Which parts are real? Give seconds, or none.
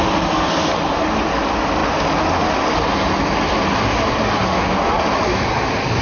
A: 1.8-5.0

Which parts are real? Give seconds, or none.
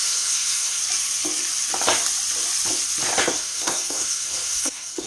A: 0.8-3.2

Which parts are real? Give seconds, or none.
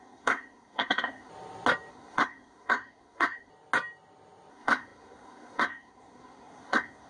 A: 1.3-1.9; 3.5-4.5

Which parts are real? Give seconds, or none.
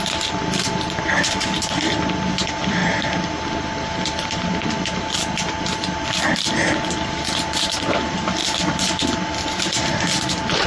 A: 0.0-10.7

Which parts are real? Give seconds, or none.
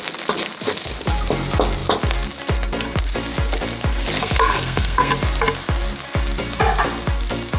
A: 0.0-4.2; 5.1-7.6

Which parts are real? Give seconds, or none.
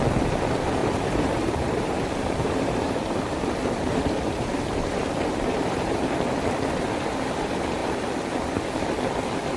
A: 0.0-0.8; 6.0-9.6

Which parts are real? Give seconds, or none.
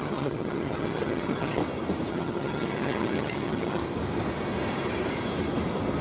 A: 1.6-2.1; 3.8-6.0